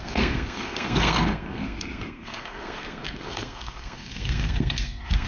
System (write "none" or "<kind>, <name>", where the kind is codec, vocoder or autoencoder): codec, SNAC